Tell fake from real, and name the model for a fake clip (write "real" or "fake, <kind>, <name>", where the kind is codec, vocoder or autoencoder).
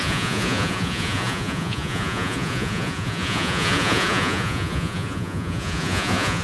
fake, vocoder, Vocos